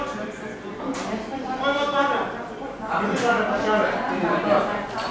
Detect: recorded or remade recorded